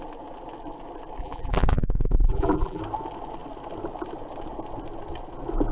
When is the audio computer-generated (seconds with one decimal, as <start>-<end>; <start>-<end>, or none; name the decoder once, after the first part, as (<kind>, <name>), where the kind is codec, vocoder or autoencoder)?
1.2-2.8 (vocoder, BigVGAN v2)